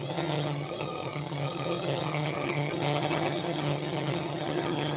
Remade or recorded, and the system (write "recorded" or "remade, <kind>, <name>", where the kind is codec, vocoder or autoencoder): remade, vocoder, HiFi-GAN